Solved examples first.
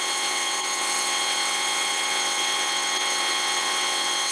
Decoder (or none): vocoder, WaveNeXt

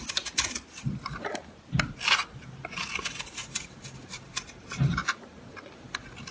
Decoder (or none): none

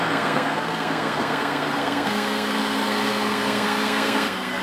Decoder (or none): codec, SNAC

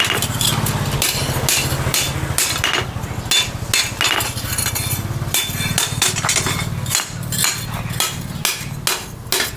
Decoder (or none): none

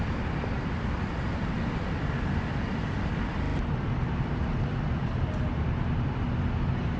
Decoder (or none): none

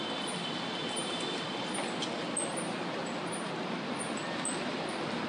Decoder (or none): none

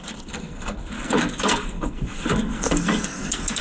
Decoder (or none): codec, SNAC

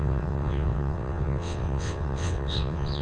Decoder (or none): vocoder, WaveNeXt